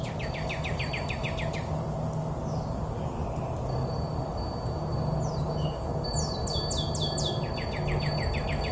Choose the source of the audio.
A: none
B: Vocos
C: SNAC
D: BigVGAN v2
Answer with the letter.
A